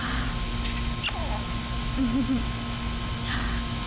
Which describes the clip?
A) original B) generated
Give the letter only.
A